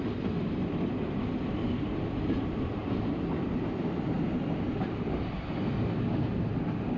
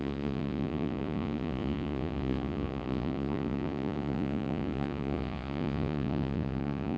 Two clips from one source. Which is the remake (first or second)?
second